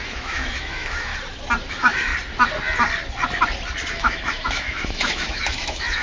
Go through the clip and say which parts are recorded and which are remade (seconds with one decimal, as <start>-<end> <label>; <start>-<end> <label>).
0.0-1.1 remade; 1.1-1.7 recorded; 1.7-2.1 remade; 2.1-3.9 recorded; 3.9-6.0 remade